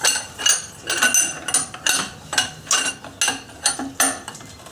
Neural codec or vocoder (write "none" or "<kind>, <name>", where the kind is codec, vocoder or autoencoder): none